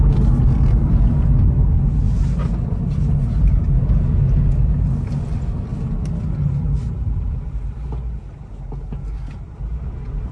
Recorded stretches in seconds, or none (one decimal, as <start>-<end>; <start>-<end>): 0.0-10.3